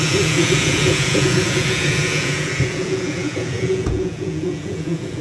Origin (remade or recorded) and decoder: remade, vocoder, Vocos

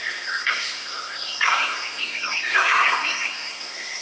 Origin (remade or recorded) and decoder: remade, codec, SNAC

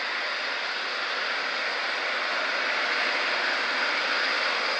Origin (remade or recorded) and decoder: recorded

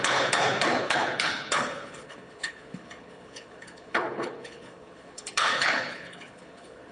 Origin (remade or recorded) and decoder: remade, codec, HILCodec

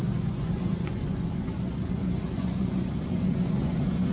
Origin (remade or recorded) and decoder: remade, vocoder, Vocos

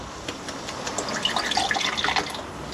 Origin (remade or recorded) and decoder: recorded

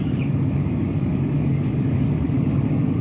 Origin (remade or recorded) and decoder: remade, codec, DAC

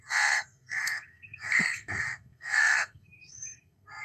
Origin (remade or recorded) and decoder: remade, codec, SNAC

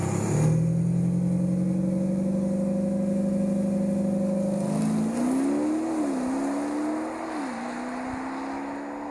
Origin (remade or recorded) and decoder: recorded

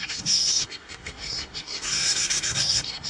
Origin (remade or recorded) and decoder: remade, codec, SNAC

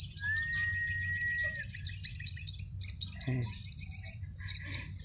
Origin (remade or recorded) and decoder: recorded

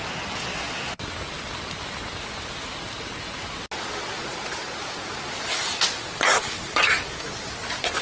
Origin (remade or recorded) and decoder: recorded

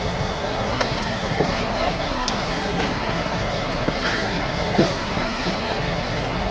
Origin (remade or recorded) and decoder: remade, codec, SNAC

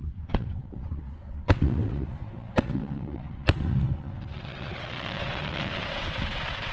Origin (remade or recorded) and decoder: remade, vocoder, WaveNeXt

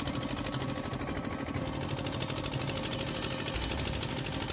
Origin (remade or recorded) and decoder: recorded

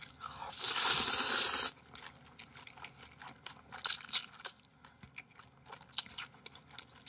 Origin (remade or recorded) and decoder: recorded